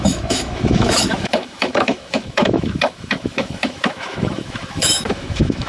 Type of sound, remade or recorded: remade